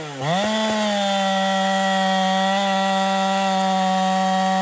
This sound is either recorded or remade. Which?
recorded